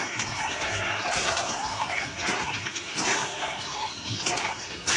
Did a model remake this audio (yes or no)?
yes